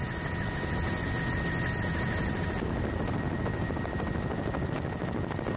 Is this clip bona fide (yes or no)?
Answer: yes